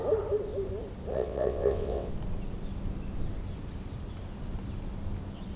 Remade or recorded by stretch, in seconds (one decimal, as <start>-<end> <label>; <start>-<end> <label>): 0.0-1.1 recorded; 1.1-2.1 remade; 2.1-5.6 recorded